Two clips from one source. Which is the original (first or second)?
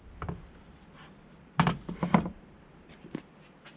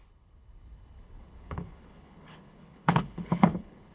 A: first